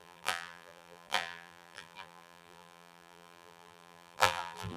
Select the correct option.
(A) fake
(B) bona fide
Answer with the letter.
A